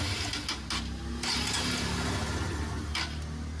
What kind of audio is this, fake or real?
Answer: real